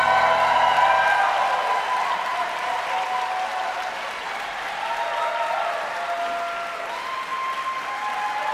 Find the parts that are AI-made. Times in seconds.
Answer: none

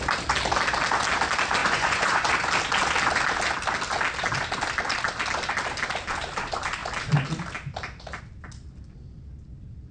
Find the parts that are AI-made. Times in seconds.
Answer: 1.6-2.3 (vocoder, Vocos)

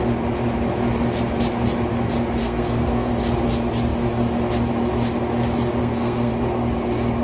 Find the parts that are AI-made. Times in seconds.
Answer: 2.4-3.1 (codec, SNAC); 5.8-6.3

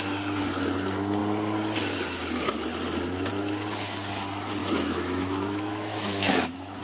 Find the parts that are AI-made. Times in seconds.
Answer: 4.6-6.8 (autoencoder, DAC-VAE)

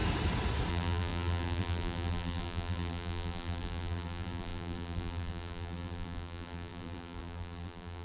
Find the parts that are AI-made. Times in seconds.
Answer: 0.7-8.0 (vocoder, BigVGAN v2)

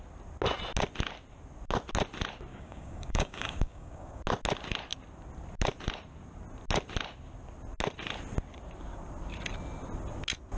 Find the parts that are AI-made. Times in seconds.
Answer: 2.5-4.2 (codec, DAC)

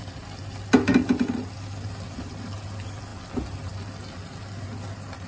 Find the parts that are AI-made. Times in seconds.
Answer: none

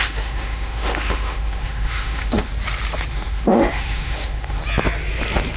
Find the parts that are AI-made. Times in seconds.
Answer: 0.0-2.5 (autoencoder, DAC-VAE); 3.1-4.6